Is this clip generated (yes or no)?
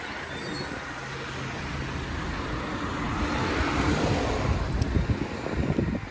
no